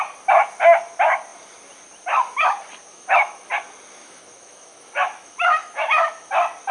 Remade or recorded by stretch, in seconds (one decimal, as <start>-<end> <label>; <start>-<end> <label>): 0.0-2.9 recorded; 2.9-3.5 remade; 3.5-4.0 recorded; 4.0-6.3 remade; 6.3-6.7 recorded